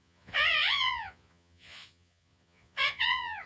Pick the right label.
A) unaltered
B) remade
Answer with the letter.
B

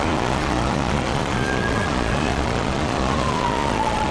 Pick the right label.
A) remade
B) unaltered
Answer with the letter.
A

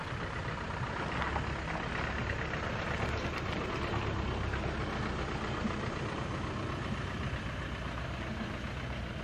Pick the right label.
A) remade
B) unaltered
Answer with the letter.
B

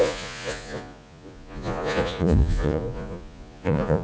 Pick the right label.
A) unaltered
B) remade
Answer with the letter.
B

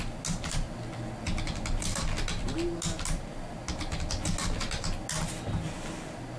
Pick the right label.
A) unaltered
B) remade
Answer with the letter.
A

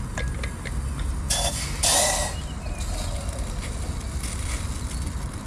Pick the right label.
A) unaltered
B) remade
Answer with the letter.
A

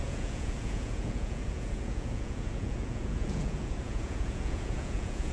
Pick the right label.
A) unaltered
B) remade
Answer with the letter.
B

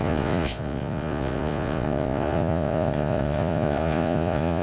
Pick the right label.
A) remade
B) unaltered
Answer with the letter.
A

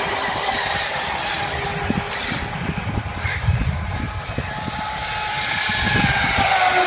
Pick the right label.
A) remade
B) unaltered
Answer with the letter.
B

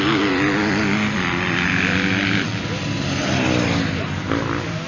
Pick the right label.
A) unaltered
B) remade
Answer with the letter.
A